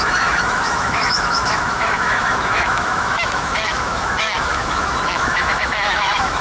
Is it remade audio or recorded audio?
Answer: remade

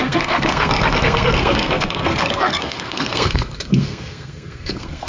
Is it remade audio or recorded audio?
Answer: remade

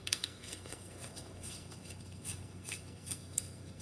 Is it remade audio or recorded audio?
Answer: remade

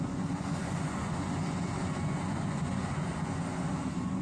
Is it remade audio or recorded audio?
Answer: remade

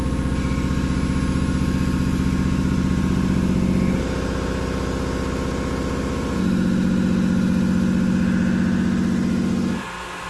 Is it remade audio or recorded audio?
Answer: recorded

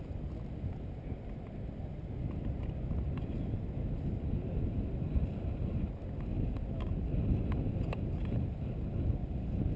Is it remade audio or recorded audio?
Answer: recorded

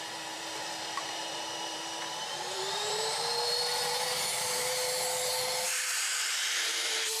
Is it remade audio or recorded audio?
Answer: remade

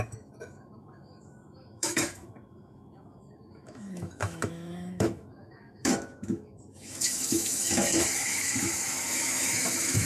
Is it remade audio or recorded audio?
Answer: remade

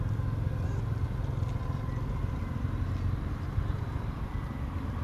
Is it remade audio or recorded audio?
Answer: recorded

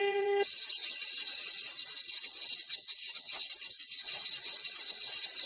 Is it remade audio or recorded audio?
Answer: remade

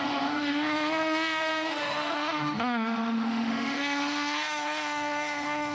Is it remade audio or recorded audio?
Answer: remade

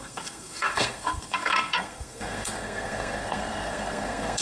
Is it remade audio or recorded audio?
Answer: remade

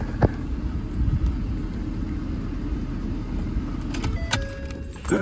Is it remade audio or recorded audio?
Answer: recorded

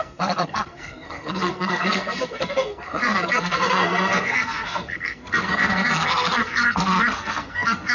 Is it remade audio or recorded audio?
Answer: remade